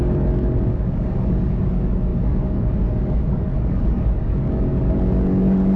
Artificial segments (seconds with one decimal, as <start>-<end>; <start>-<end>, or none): 0.0-5.8